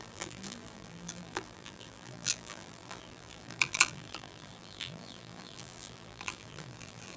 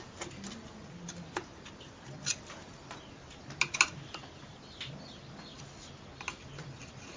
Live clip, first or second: second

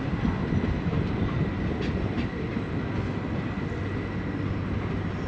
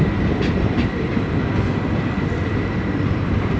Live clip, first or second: first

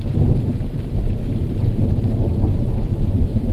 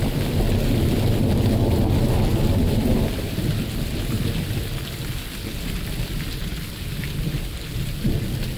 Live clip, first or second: second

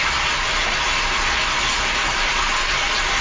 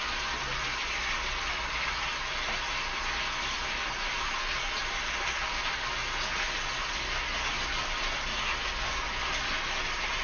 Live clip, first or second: second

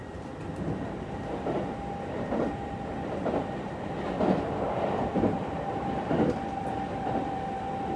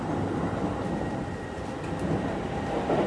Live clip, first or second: second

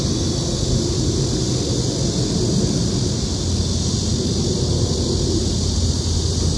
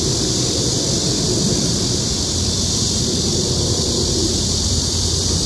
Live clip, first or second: first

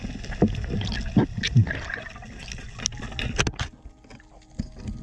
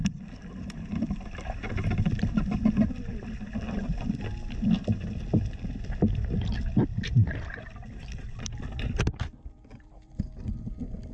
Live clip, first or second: first